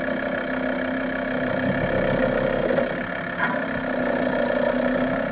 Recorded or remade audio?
recorded